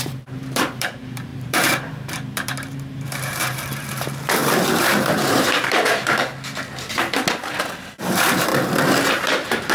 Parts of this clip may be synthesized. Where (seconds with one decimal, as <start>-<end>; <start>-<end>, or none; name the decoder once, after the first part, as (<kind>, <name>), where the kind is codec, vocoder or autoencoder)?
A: 0.0-6.3 (vocoder, BigVGAN v2); 8.1-8.5; 9.1-9.7